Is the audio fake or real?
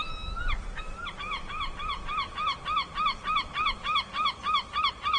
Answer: real